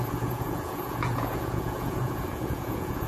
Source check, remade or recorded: remade